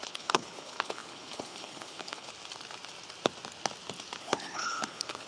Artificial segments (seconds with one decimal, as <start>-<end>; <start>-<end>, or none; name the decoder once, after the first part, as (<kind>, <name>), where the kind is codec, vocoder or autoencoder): 0.0-2.3 (codec, HILCodec); 4.2-5.3